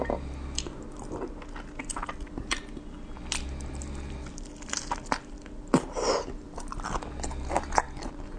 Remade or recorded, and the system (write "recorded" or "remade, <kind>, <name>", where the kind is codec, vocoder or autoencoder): recorded